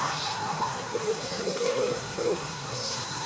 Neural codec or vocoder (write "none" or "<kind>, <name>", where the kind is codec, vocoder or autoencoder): codec, SNAC